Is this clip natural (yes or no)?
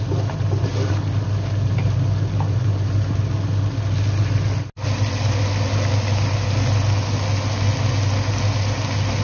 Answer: yes